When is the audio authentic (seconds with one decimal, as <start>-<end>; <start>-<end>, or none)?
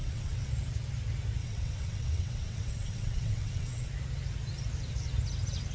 0.5-1.4; 3.9-5.7